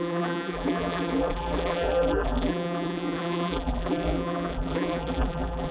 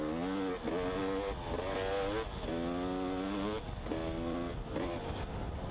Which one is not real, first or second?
first